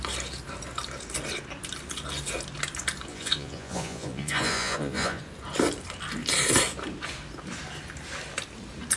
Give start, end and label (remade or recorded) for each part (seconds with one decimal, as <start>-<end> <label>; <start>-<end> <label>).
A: 0.0-3.1 recorded; 3.1-5.2 remade; 5.2-9.0 recorded